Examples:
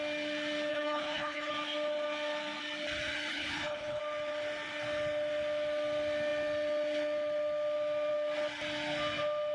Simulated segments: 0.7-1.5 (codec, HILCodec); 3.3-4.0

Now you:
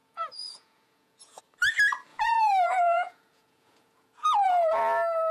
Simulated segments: 0.0-1.4 (vocoder, Vocos); 2.1-4.8

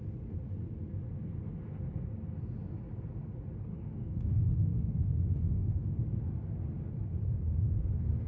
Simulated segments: 3.7-6.0 (autoencoder, DAC-VAE)

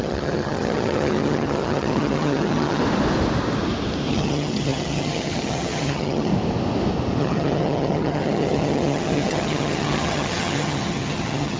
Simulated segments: 0.0-2.8 (vocoder, HiFi-GAN); 4.1-6.3; 7.2-11.6